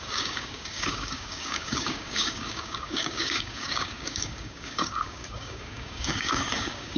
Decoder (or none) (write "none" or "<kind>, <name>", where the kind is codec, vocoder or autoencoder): codec, DAC